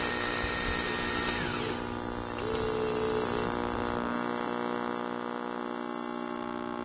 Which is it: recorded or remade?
recorded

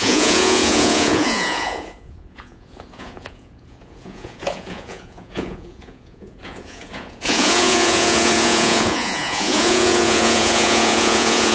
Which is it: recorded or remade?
remade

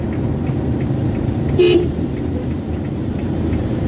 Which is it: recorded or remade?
remade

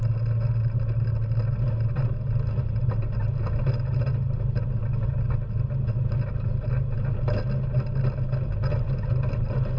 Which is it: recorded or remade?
recorded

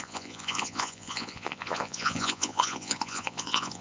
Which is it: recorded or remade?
remade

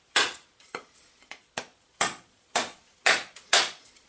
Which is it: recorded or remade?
remade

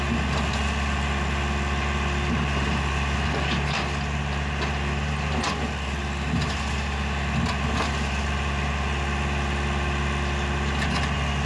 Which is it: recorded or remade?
recorded